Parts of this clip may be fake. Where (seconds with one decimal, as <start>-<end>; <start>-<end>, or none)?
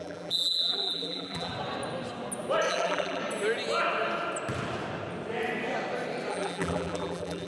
0.0-1.5; 2.7-3.2; 6.3-7.5